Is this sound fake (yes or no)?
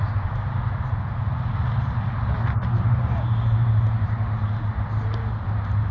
yes